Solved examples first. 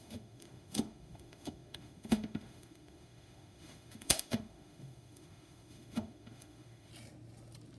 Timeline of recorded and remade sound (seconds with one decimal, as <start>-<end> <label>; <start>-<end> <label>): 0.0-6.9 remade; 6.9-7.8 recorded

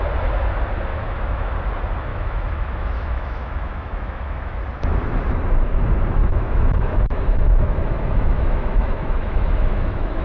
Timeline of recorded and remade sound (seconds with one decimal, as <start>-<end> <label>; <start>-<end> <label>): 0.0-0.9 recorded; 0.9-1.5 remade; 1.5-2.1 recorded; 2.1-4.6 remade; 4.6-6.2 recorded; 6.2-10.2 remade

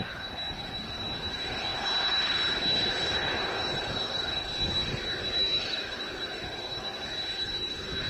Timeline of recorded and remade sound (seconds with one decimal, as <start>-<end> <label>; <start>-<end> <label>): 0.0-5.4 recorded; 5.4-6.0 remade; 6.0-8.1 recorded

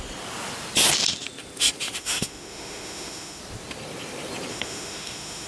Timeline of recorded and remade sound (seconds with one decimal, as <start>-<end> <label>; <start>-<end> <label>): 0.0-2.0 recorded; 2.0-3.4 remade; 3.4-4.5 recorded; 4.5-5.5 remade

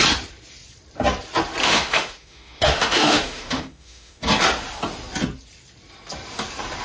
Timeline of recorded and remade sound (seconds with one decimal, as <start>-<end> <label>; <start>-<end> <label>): 0.0-1.6 recorded; 1.6-4.2 remade; 4.2-6.8 recorded